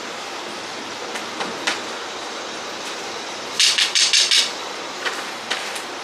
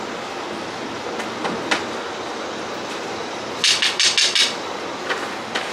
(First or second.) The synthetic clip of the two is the first